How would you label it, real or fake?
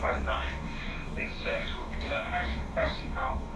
fake